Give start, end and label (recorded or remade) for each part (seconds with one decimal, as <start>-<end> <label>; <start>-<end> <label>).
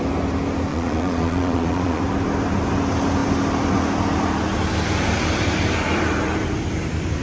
0.0-0.7 recorded; 0.7-2.0 remade; 2.0-7.2 recorded